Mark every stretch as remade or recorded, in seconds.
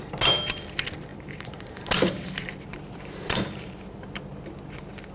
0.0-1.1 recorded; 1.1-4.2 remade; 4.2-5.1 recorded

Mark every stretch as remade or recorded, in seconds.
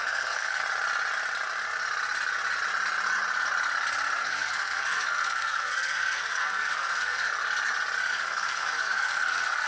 0.0-0.6 remade; 0.6-4.2 recorded; 4.2-7.3 remade; 7.3-8.1 recorded; 8.1-9.7 remade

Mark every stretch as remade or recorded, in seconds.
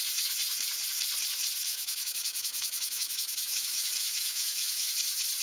0.0-1.7 recorded; 1.7-4.9 remade; 4.9-5.4 recorded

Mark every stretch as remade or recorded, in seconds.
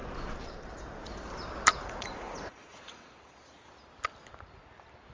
0.0-1.8 recorded; 1.8-3.7 remade; 3.7-5.1 recorded